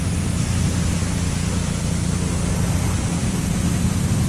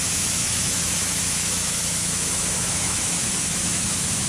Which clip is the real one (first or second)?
first